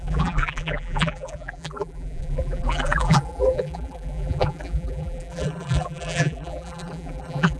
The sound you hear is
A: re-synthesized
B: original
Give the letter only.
A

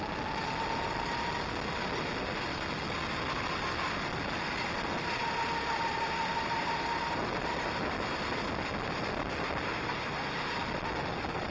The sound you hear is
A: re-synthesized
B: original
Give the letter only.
B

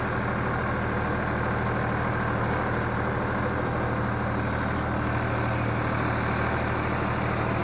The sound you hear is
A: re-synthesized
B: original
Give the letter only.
B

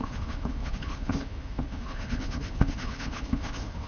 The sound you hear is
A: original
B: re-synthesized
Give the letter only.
B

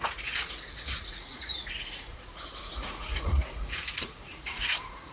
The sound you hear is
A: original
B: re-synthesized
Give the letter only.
B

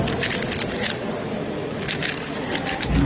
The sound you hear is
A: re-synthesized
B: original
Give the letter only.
B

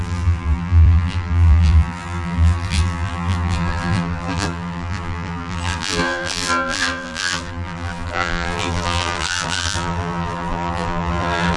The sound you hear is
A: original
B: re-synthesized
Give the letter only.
B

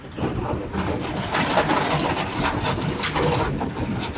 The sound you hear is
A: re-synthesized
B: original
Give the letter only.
B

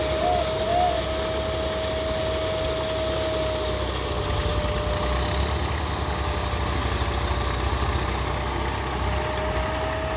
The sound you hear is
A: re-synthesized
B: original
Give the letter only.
B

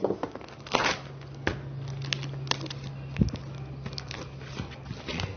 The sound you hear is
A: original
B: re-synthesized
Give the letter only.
A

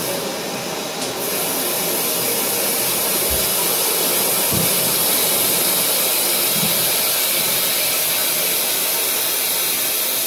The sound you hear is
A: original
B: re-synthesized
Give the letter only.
A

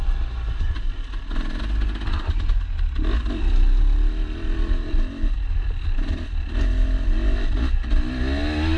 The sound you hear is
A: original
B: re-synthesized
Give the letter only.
A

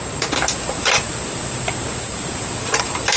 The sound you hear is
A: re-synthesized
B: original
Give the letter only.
A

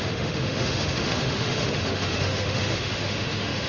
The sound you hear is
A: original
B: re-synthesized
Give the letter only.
B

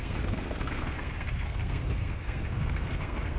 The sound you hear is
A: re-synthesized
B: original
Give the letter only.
A